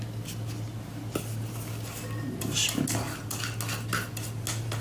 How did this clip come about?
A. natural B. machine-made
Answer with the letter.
A